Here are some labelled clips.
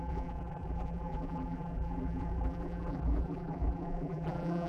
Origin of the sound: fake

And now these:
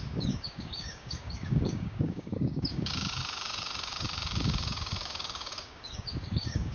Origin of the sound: fake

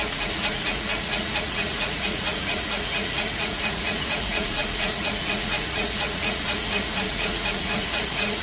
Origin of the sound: fake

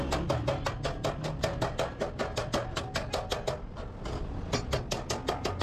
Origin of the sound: real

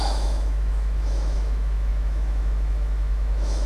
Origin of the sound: fake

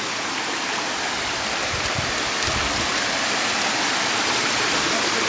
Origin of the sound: real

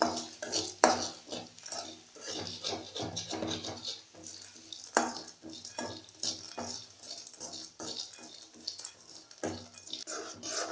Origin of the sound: real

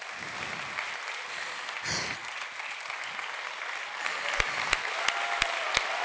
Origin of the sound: real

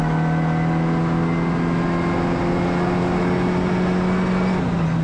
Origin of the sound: real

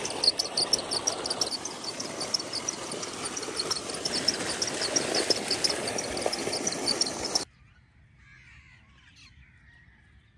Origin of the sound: real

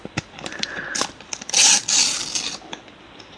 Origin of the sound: fake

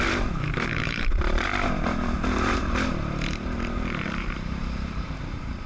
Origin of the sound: fake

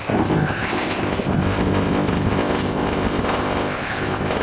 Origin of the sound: fake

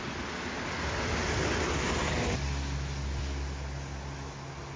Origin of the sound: real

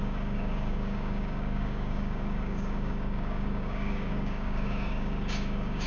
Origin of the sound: fake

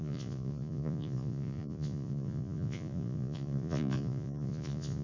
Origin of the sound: fake